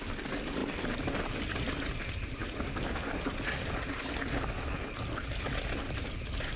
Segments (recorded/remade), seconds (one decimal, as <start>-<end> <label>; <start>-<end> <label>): 0.0-6.6 recorded